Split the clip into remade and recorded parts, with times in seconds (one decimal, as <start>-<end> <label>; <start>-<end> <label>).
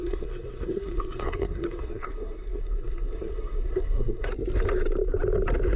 0.0-4.3 remade; 4.3-5.8 recorded